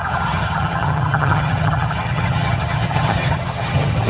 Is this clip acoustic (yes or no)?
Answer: no